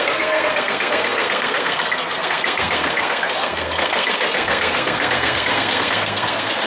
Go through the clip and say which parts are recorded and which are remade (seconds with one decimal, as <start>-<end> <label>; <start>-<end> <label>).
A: 0.0-6.7 remade